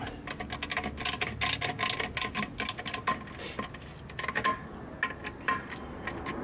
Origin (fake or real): real